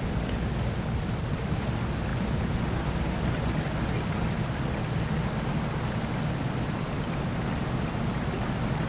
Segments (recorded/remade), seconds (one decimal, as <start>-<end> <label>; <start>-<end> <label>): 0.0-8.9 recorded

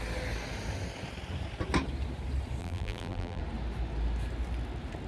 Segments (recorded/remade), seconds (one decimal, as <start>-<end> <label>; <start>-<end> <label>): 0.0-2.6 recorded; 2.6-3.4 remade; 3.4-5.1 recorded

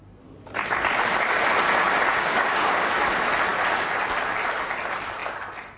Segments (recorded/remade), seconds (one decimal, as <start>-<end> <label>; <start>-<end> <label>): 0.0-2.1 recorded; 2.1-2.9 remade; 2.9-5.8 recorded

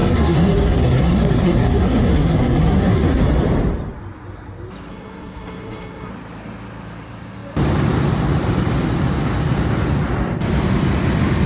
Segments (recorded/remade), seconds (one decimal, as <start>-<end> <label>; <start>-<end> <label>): 0.0-3.2 remade; 3.2-4.9 recorded; 4.9-6.1 remade; 6.1-11.5 recorded

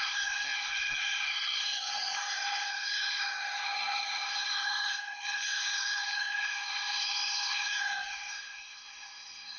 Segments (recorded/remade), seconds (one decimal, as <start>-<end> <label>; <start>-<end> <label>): 0.0-9.6 remade

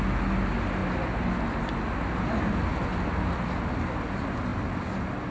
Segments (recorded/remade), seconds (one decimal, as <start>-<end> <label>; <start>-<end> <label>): 0.0-5.3 recorded